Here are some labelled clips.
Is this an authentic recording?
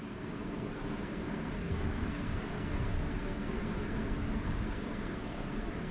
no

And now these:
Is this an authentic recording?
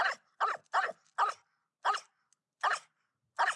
yes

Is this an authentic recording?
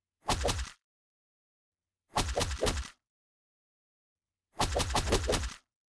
no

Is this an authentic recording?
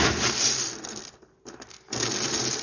yes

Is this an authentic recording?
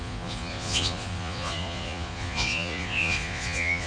no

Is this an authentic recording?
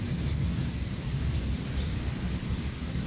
no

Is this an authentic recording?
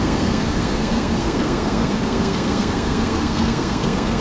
no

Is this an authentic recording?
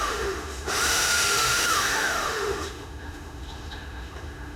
no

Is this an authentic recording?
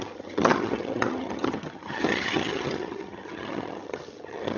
no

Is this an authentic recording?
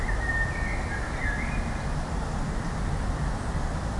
yes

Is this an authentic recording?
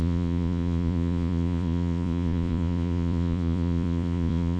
no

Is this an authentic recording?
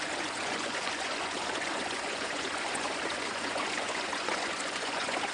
no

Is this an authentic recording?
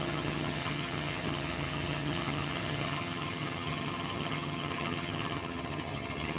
no